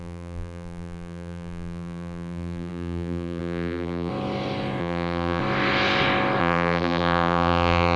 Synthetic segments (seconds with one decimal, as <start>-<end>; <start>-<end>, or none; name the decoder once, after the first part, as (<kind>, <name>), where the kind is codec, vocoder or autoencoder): 0.0-4.1 (vocoder, BigVGAN v2); 4.8-5.4; 6.4-8.0

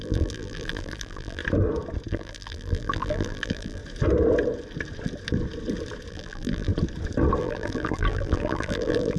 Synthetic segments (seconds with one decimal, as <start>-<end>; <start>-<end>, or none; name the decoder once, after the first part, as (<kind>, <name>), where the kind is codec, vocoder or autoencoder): 0.0-1.4 (vocoder, BigVGAN v2); 2.1-3.8; 6.1-6.7; 7.4-9.2